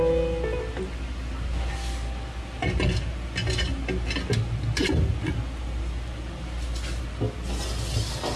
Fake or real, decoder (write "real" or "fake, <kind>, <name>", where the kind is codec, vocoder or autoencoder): real